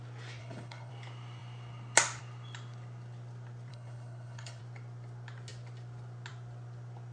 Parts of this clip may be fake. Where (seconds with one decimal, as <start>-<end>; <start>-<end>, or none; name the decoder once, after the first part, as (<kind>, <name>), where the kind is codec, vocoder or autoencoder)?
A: 0.4-0.9 (codec, HILCodec); 3.7-4.6